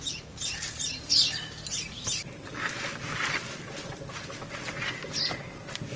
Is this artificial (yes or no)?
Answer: no